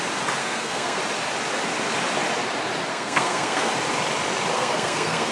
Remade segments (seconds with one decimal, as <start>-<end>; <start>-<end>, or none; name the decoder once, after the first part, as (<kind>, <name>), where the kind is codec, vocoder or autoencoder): 0.4-1.0 (codec, SNAC); 2.9-3.7; 4.5-5.3